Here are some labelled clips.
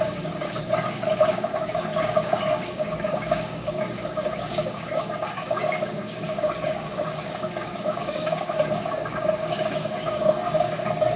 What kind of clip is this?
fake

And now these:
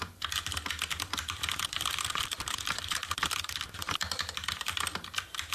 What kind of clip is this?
real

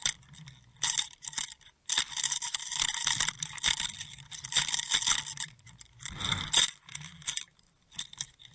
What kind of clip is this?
real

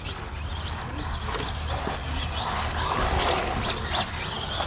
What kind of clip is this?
real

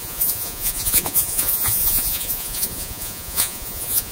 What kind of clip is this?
fake